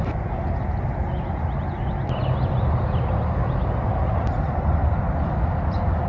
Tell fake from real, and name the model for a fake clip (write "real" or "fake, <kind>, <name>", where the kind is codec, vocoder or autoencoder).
real